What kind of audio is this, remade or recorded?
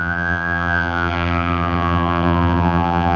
remade